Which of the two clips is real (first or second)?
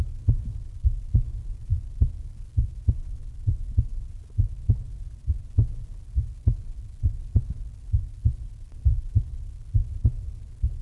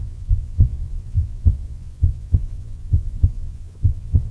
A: first